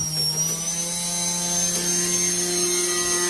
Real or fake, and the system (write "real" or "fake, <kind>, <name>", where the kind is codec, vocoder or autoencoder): real